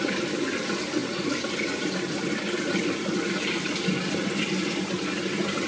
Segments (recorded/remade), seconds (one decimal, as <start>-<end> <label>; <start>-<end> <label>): 0.0-5.7 recorded